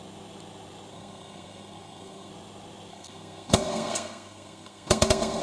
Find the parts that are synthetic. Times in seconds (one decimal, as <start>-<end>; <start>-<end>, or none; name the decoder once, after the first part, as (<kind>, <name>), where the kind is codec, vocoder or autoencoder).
0.9-2.3 (codec, SNAC); 2.9-5.4